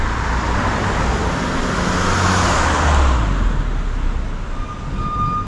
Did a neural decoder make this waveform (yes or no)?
no